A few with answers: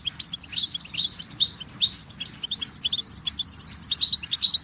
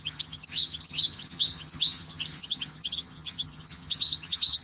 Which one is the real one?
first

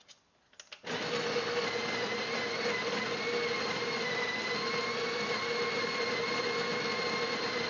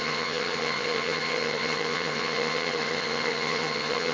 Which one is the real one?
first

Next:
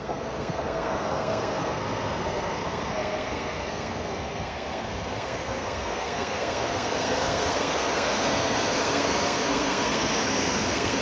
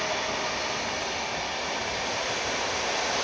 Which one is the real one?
second